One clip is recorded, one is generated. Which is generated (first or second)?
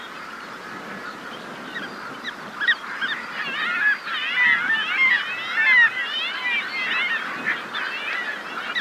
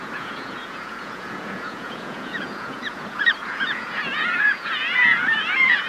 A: second